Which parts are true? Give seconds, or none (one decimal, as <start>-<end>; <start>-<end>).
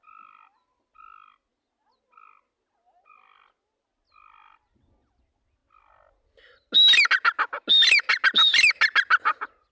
0.0-9.7